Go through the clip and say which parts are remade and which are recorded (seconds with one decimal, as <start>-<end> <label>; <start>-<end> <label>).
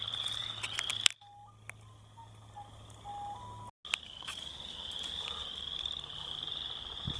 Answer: 0.0-7.2 recorded